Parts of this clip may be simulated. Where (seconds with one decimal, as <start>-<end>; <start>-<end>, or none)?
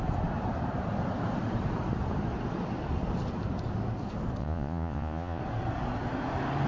4.4-5.4